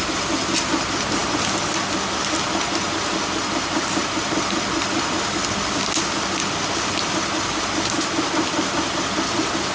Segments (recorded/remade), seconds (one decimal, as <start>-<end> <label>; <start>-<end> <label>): 0.0-9.7 recorded